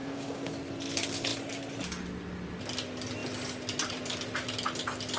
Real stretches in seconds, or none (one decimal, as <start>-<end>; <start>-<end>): 0.5-5.2